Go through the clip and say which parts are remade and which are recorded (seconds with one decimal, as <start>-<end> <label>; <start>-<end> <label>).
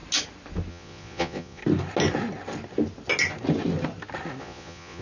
0.0-0.7 recorded; 0.7-1.6 remade; 1.6-4.4 recorded; 4.4-5.0 remade